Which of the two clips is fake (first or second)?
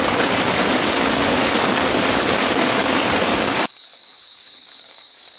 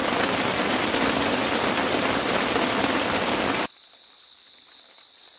first